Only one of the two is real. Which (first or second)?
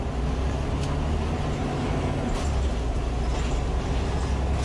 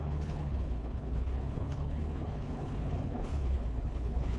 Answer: first